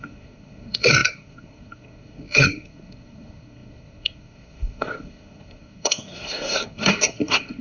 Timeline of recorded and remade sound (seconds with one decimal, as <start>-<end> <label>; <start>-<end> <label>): 0.0-7.6 remade